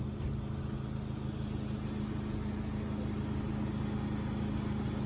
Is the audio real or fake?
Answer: real